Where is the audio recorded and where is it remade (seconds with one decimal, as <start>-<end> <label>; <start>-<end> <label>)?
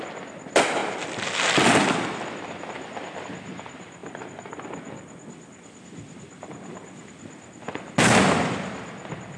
0.0-9.4 recorded